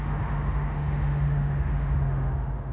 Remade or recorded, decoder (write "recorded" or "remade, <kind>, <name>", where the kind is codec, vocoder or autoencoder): remade, autoencoder, DAC-VAE